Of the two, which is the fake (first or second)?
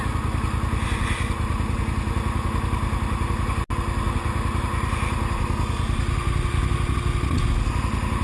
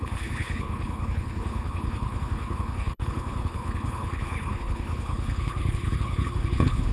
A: second